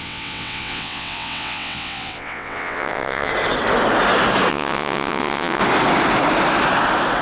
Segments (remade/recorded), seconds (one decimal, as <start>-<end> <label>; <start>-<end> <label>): 0.0-3.3 remade; 3.3-4.5 recorded; 4.5-5.6 remade; 5.6-7.2 recorded